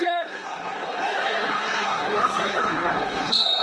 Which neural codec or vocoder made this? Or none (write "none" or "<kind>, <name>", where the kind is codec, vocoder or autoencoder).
codec, SNAC